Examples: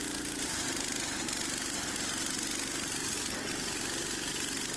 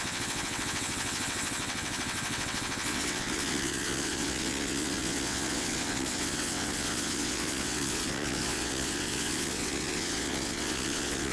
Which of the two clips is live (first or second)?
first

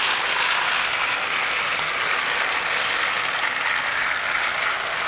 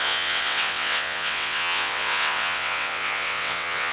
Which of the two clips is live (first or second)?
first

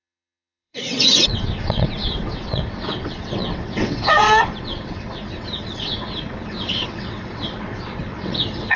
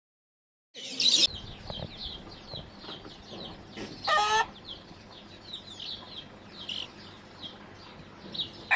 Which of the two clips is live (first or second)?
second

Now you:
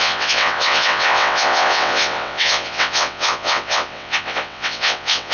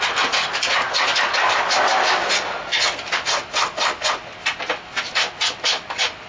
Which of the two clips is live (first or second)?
second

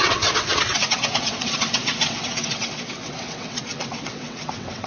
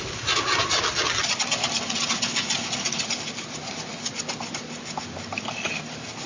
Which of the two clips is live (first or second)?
second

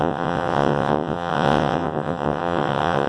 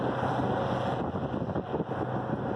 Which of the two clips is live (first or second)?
second